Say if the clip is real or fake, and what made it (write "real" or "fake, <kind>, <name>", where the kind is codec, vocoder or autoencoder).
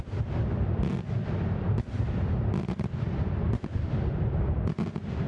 real